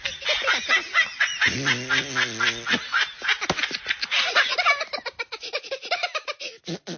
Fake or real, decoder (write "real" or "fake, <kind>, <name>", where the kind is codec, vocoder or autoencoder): real